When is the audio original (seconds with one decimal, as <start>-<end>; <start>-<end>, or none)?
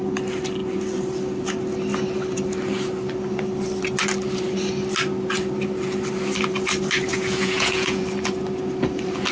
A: 0.0-7.1; 8.0-9.3